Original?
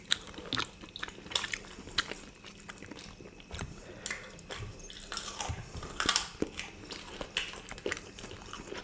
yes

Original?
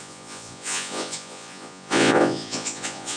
no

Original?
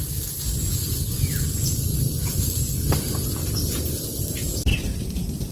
no